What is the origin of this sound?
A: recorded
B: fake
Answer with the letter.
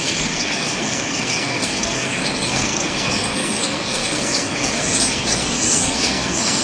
B